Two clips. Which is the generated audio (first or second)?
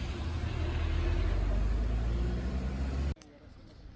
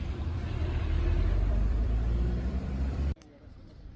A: second